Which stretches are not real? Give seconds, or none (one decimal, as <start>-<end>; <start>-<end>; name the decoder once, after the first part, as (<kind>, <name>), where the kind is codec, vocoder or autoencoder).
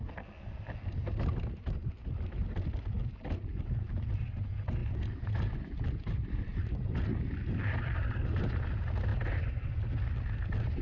none